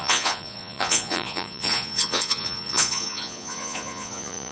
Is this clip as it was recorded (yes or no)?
no